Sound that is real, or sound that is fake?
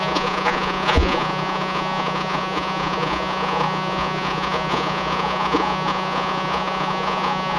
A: fake